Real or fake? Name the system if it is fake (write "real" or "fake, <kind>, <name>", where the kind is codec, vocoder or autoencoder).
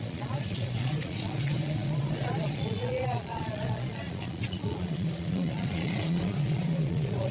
fake, vocoder, Vocos